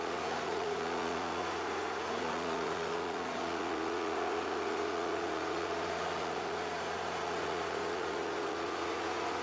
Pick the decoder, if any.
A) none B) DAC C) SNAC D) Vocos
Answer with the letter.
D